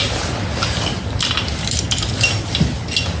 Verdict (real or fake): real